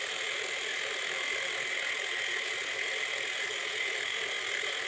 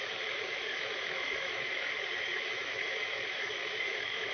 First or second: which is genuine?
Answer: first